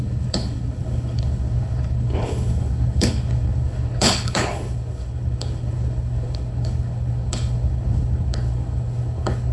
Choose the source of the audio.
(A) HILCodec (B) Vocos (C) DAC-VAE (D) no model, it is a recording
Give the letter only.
A